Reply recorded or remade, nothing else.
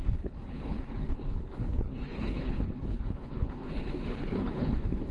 remade